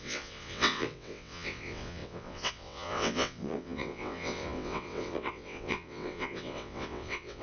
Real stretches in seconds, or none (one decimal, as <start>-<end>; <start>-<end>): none